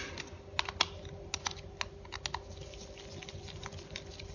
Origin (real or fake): real